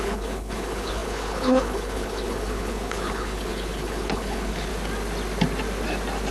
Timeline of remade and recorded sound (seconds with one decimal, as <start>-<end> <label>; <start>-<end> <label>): 0.0-4.7 remade; 4.7-6.3 recorded